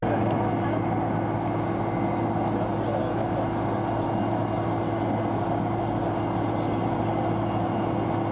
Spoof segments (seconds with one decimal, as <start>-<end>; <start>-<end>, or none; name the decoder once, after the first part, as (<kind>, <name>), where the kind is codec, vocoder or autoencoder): none